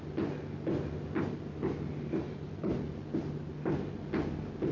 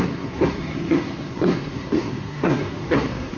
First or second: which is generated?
second